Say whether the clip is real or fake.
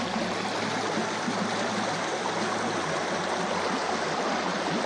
real